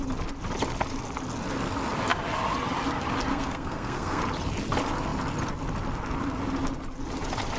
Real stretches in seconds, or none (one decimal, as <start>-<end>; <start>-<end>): 0.0-3.3; 4.2-7.6